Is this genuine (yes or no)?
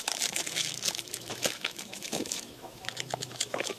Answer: no